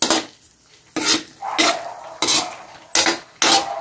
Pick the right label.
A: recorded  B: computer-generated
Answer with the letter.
A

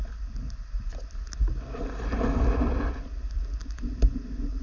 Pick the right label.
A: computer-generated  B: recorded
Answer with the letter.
B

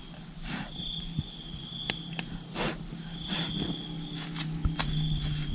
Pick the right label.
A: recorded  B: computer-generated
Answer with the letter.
A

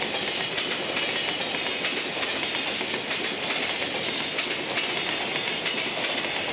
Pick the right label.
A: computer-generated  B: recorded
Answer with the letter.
B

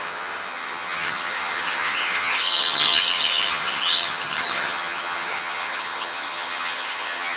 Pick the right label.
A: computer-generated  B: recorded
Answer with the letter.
A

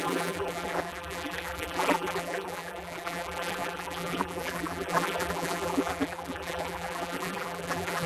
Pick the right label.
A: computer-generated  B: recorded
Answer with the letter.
A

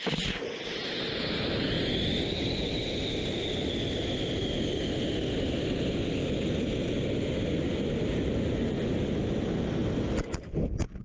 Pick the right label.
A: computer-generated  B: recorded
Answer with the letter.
B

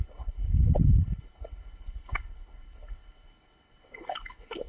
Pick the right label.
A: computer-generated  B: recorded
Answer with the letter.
A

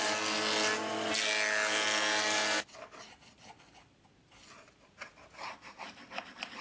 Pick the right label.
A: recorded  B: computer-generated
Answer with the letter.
A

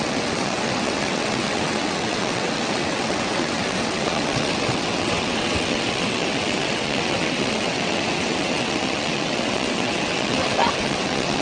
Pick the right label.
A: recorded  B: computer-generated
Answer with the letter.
B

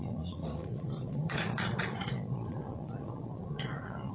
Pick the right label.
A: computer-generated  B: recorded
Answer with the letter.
A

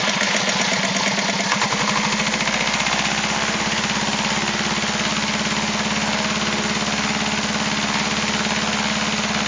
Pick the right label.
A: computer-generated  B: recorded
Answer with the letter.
B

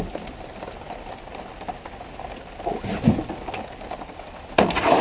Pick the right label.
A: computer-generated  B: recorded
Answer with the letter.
B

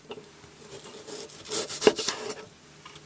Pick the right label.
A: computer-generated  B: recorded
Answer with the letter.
B